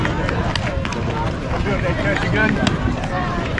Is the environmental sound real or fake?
real